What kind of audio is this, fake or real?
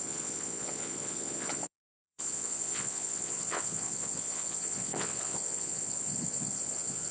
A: fake